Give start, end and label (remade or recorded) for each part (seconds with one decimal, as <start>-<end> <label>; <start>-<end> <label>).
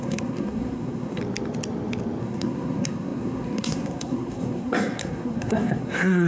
0.0-1.2 remade; 1.2-2.2 recorded; 2.2-6.3 remade